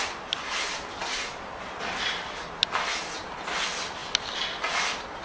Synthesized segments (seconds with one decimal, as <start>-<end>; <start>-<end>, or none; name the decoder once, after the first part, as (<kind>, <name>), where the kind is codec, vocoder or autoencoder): none